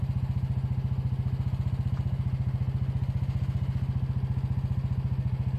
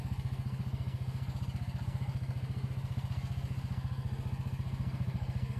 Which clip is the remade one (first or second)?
second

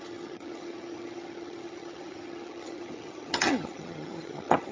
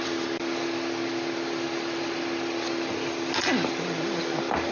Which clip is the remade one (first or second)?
first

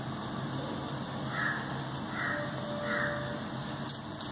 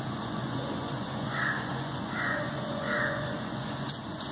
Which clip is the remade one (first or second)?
second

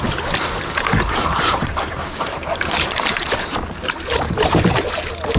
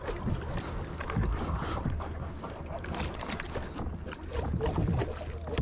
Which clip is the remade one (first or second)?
first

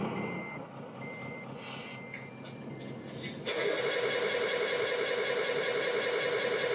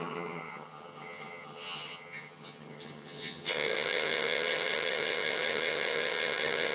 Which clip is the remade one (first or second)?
second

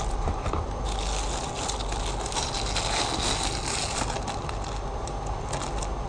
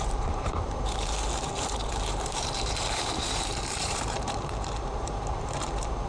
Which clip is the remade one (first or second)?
second